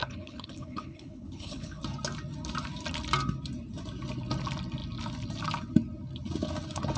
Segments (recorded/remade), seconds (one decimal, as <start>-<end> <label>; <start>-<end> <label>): 0.0-1.8 remade; 1.8-7.0 recorded